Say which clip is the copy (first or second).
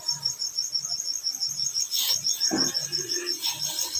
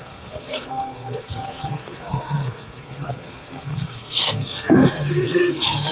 second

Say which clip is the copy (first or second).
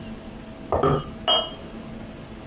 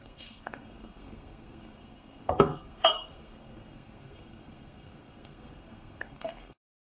second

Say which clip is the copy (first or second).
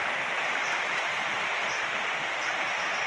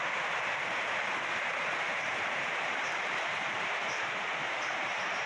second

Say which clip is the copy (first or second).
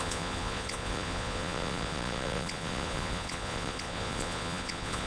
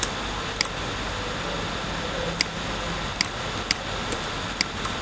first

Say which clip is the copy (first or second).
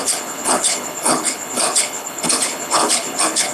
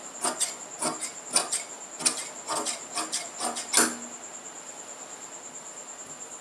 first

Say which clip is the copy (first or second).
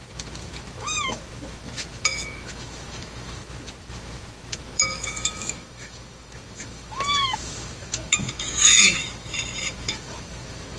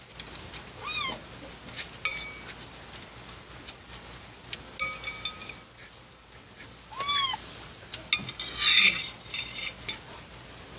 first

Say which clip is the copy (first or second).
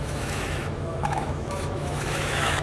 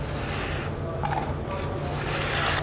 first